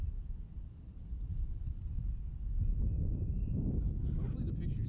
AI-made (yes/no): no